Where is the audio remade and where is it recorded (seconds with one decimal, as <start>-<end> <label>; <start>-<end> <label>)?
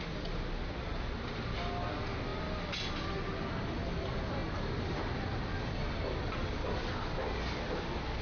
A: 0.0-8.2 recorded